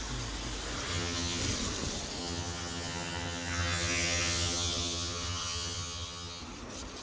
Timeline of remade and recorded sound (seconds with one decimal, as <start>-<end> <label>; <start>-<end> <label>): 0.0-0.9 recorded; 0.9-1.4 remade; 1.4-2.2 recorded; 2.2-6.4 remade; 6.4-7.0 recorded